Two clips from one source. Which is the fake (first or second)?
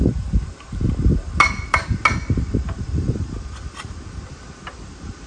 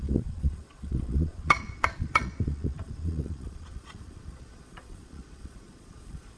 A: second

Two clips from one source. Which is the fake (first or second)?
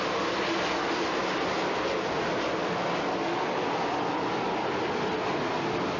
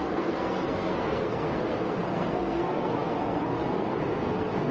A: second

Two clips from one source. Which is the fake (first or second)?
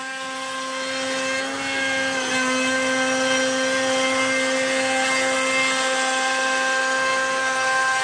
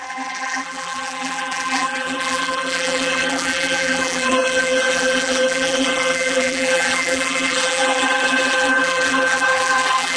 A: second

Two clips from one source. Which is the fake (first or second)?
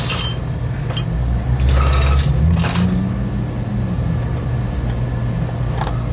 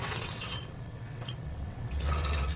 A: second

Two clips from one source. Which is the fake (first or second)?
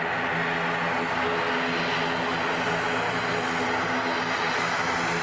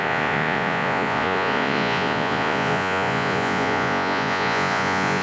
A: second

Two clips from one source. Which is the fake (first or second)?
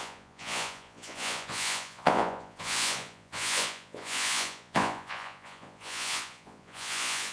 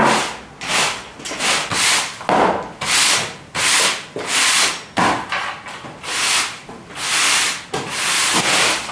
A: first